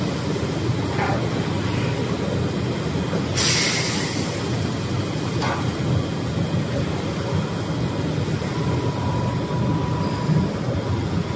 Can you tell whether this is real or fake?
real